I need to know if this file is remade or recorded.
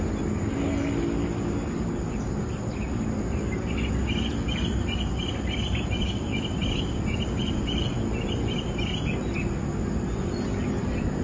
recorded